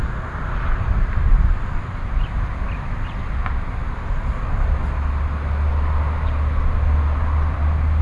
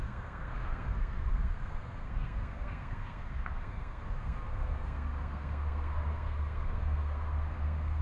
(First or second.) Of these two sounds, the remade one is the second